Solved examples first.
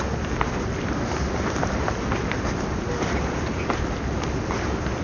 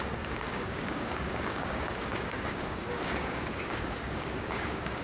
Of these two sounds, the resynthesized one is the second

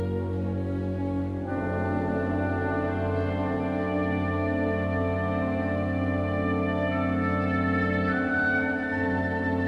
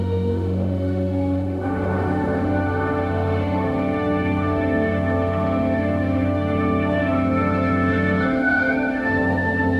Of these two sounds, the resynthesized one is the second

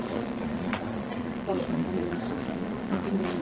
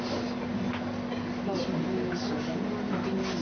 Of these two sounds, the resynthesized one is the first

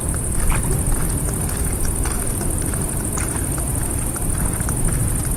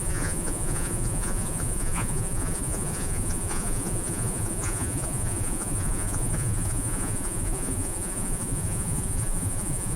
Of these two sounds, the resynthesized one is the second